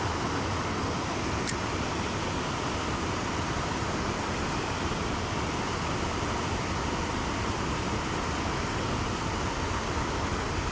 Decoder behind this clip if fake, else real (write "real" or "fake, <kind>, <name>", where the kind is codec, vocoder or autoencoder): real